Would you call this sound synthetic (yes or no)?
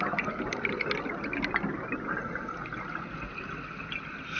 no